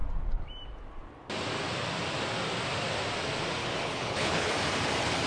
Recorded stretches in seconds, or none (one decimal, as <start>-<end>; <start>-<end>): 0.0-3.6; 4.5-5.3